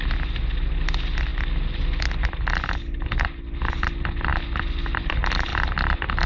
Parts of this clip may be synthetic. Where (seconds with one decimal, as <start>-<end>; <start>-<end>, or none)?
none